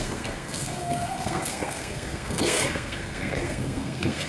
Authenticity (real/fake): fake